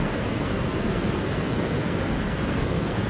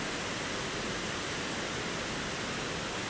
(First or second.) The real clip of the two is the second